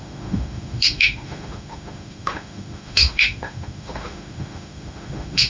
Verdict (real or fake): fake